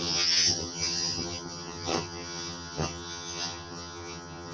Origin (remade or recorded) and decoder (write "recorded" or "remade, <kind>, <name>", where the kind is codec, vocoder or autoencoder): remade, vocoder, HiFi-GAN